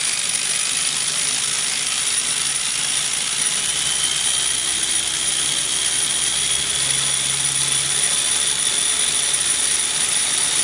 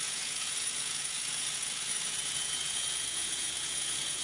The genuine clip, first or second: first